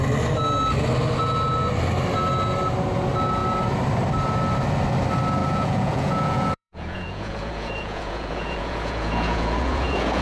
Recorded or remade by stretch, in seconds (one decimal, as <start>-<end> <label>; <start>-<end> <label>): 0.0-5.4 recorded; 5.4-10.2 remade